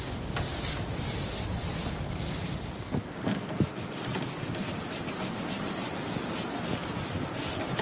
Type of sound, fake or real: real